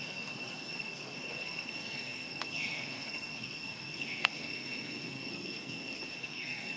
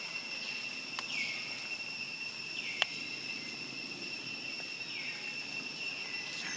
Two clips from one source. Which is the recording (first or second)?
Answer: second